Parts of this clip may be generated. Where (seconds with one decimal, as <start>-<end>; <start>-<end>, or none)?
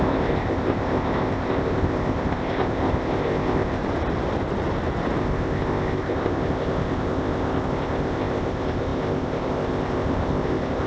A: 0.0-3.8; 5.2-10.9